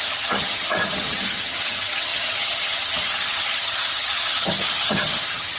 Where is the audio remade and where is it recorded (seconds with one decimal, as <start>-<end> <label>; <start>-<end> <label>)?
0.0-5.6 remade